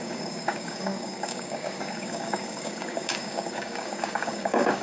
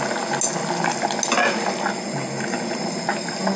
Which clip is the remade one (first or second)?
first